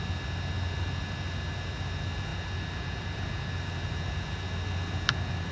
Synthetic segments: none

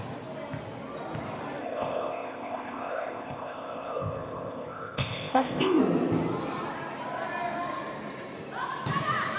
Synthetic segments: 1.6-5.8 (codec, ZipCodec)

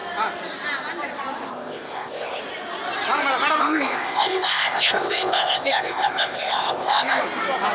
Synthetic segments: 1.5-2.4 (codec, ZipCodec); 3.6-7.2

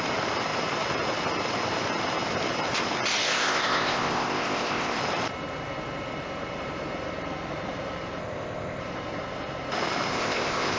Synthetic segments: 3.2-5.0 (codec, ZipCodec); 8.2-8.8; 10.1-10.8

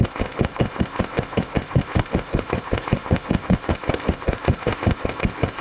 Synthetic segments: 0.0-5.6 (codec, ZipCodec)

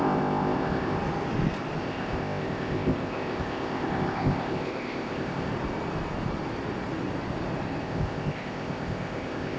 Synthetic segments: 0.0-1.0 (codec, ZipCodec); 1.8-5.5; 7.8-9.6

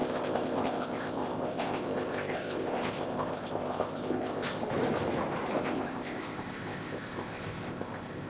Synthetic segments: 0.0-4.6 (codec, ZipCodec); 5.6-8.3